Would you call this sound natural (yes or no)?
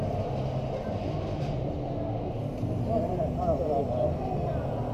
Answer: yes